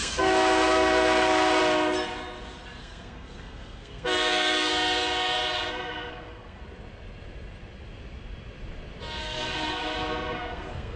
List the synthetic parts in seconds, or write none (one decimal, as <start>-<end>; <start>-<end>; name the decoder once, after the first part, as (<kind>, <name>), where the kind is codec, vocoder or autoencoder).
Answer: 0.0-1.6 (codec, SNAC); 2.8-4.7; 5.7-6.6; 9.2-11.0